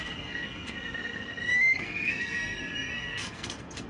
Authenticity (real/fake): fake